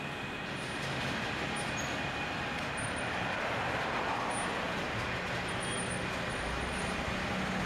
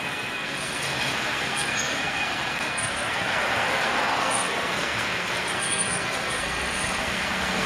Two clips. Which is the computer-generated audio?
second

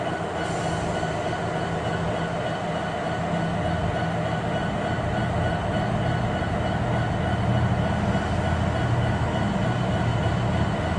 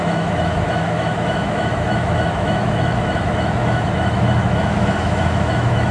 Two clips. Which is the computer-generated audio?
second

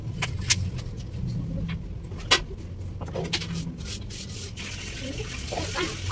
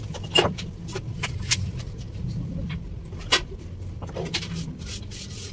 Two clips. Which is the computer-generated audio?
second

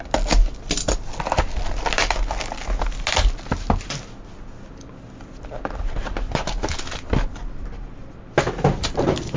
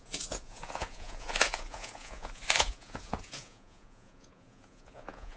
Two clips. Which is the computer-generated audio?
second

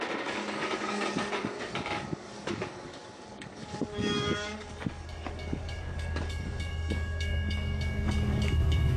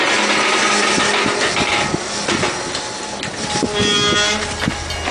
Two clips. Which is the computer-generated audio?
first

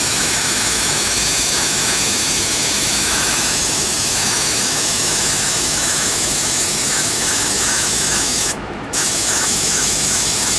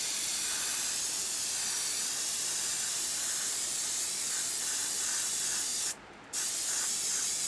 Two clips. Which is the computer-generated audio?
first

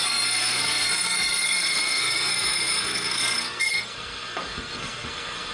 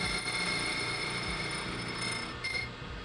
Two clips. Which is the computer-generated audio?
first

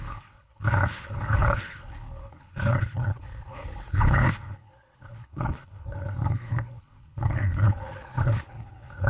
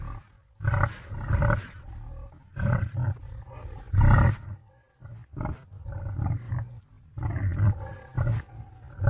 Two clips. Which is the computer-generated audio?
first